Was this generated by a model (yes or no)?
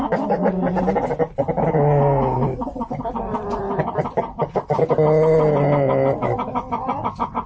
no